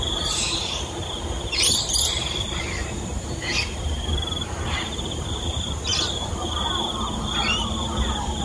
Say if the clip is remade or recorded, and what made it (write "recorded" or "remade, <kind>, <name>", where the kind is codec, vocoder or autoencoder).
remade, vocoder, BigVGAN v2